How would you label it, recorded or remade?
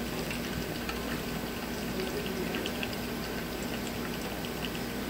recorded